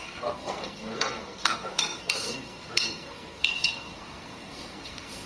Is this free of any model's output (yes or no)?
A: no